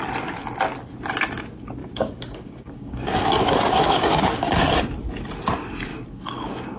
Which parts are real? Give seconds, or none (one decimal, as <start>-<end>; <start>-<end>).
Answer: 0.0-1.8; 4.5-5.9